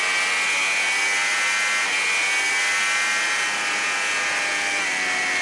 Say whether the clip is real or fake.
real